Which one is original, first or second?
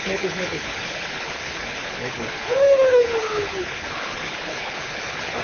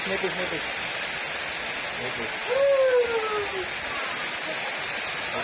second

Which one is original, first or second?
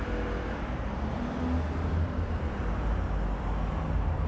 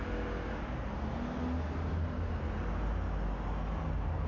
second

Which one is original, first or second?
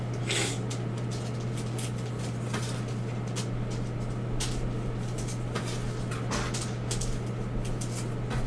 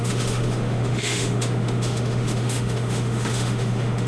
first